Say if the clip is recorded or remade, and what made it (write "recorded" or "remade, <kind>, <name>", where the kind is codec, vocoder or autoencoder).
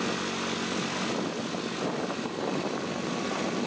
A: recorded